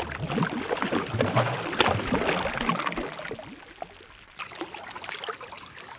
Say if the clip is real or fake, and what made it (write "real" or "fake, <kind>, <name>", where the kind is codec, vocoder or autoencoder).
real